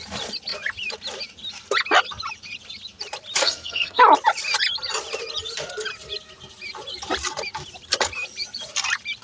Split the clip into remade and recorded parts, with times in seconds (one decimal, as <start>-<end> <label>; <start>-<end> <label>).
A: 0.0-3.4 recorded; 3.4-4.0 remade; 4.0-9.2 recorded